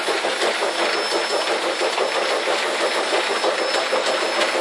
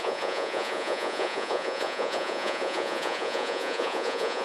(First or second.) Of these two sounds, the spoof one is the second